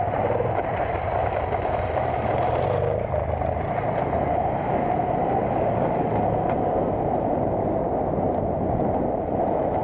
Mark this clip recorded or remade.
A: recorded